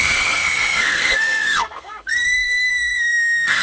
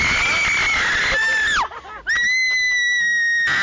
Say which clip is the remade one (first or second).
first